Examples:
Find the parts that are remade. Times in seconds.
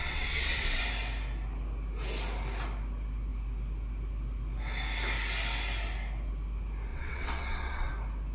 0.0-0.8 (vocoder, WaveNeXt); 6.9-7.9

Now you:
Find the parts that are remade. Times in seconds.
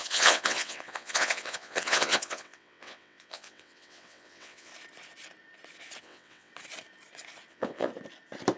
0.0-4.7 (vocoder, WaveNeXt); 6.0-6.5; 7.5-7.9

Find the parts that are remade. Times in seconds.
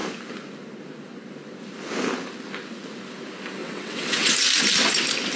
3.6-4.3 (vocoder, WaveNeXt)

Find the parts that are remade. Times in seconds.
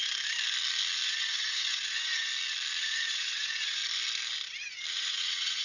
1.1-2.3 (vocoder, WaveNeXt); 2.8-3.8; 4.9-5.6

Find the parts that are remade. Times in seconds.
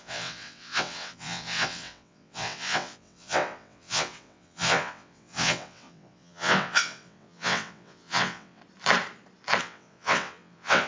0.0-8.6 (vocoder, WaveNeXt); 9.6-10.9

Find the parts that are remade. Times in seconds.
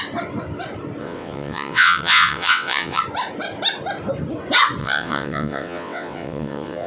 1.0-3.0 (vocoder, WaveNeXt); 4.8-6.9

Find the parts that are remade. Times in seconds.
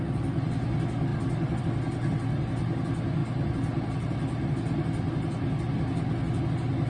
none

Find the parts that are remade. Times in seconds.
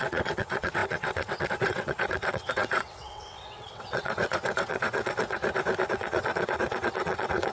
0.0-5.4 (vocoder, WaveNeXt); 5.9-7.5